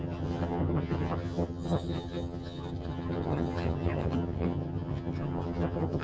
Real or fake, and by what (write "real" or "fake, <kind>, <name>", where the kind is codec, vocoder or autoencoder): fake, vocoder, HiFi-GAN